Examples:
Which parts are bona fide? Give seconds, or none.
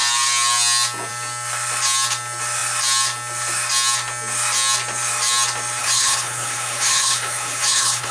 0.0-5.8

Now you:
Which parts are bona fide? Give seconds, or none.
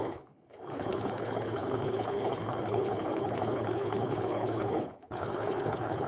none